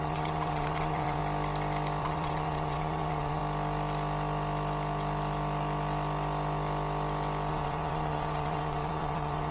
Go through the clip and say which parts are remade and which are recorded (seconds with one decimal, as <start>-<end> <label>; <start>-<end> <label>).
0.0-1.2 remade; 1.2-2.0 recorded; 2.0-3.4 remade; 3.4-7.5 recorded; 7.5-9.5 remade